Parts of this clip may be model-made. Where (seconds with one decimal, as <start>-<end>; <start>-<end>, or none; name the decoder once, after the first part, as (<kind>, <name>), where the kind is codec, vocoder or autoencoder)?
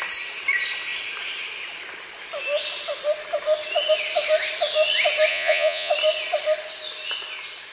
5.3-5.9 (vocoder, Vocos)